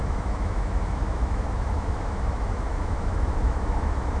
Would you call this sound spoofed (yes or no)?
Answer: yes